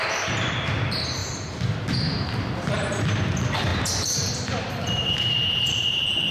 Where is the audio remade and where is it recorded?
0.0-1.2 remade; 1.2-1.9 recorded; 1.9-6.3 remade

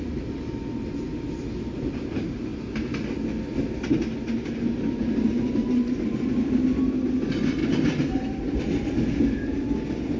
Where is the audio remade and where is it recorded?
0.0-7.6 recorded; 7.6-8.6 remade; 8.6-10.2 recorded